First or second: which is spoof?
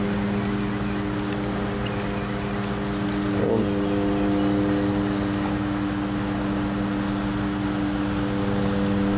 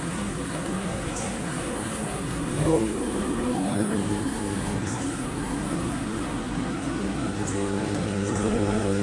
second